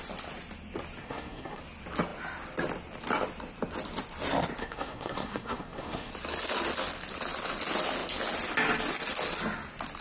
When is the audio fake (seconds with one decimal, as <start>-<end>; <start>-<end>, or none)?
1.0-1.6; 4.6-6.1